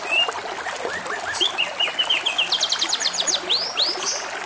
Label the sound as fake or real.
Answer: real